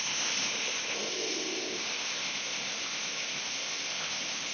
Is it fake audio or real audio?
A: fake